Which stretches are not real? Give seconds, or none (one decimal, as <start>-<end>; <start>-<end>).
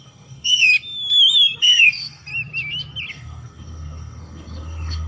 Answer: 0.0-0.7; 1.6-2.3; 3.1-5.1